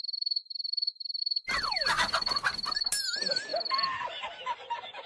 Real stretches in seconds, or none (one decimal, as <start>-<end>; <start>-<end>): 0.0-5.1